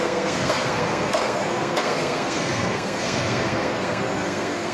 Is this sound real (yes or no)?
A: no